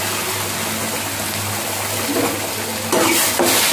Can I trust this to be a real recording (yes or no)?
yes